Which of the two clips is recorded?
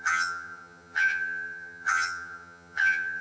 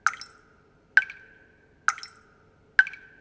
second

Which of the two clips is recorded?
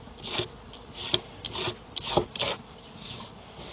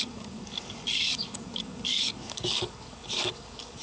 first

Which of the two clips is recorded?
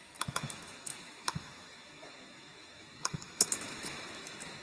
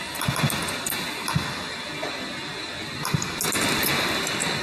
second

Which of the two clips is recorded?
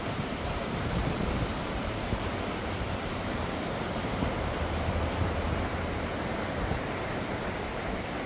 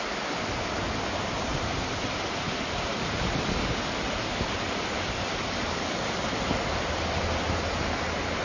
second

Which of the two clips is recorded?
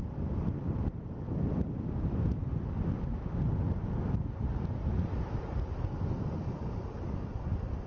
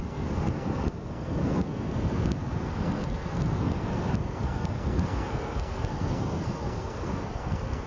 first